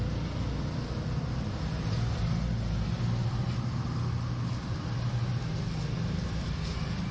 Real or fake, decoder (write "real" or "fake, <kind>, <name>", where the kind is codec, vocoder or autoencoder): real